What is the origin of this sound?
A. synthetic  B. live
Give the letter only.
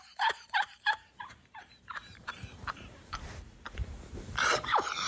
A